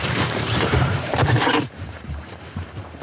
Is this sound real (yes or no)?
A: no